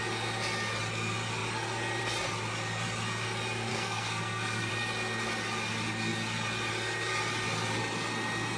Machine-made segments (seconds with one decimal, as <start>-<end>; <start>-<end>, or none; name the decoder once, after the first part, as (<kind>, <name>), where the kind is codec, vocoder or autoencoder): 3.7-4.7 (codec, SNAC)